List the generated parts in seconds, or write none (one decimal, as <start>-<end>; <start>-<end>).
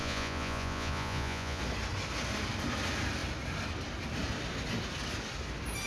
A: 0.0-1.6